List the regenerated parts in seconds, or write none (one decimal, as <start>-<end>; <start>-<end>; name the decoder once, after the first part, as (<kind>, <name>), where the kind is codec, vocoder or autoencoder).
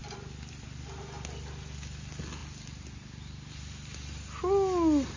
none